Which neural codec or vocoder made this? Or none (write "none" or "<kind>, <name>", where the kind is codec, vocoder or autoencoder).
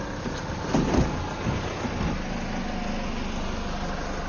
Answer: none